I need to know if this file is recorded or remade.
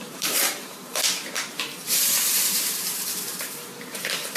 remade